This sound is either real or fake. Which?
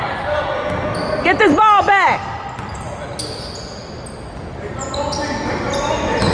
real